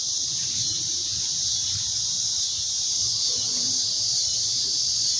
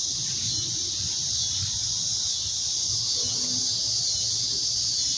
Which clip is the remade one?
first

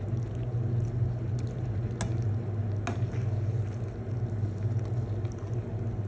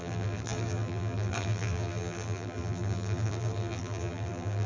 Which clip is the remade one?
second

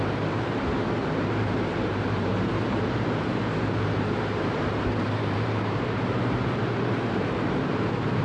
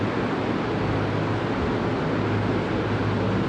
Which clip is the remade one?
first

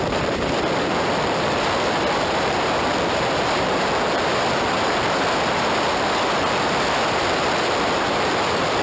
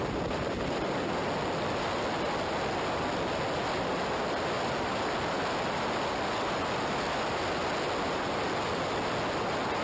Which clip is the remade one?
first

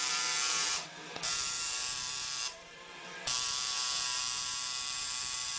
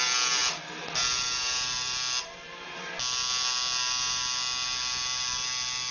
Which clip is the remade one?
first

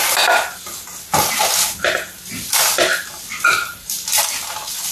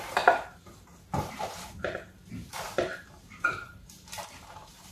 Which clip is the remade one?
second